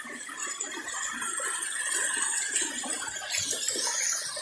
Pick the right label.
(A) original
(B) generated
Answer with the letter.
A